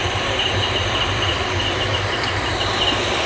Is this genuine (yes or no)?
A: no